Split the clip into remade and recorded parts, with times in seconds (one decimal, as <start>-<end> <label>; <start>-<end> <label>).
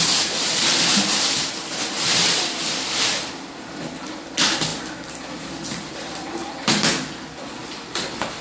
0.0-4.7 remade; 4.7-5.5 recorded; 5.5-6.9 remade; 6.9-7.9 recorded; 7.9-8.4 remade